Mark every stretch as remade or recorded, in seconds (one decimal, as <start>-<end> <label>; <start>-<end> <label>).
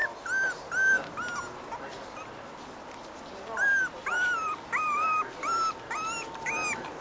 0.0-4.1 recorded; 4.1-5.2 remade; 5.2-7.0 recorded